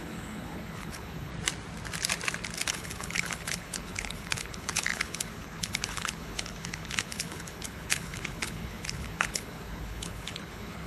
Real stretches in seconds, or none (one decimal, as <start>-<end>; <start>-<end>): 1.3-2.7